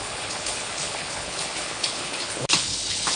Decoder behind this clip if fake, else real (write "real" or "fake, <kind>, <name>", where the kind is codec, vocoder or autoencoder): fake, codec, HILCodec